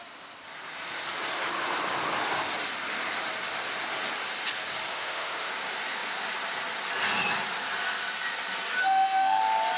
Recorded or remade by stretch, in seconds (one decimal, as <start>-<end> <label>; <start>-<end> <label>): 0.0-4.9 recorded; 4.9-5.5 remade; 5.5-8.8 recorded; 8.8-9.4 remade; 9.4-9.8 recorded